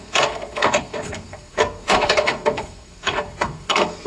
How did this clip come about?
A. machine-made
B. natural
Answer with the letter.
A